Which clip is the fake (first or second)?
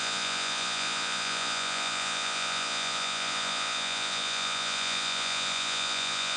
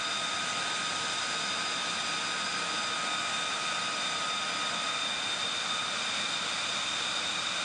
first